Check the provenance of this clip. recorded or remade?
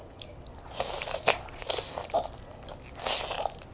recorded